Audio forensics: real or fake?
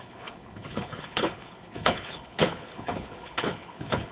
fake